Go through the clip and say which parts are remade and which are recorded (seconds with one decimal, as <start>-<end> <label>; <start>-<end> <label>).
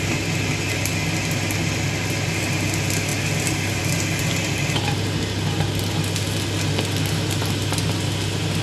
0.0-8.6 recorded